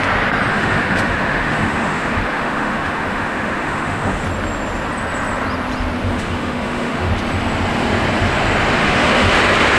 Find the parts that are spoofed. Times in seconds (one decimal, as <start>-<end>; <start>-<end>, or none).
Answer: 0.5-4.2; 6.1-7.1; 8.8-9.4